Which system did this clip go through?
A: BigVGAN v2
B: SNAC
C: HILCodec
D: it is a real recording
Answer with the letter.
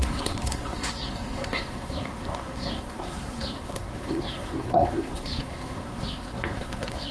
B